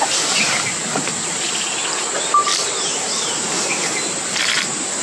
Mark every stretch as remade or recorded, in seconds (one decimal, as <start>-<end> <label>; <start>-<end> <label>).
0.0-5.0 recorded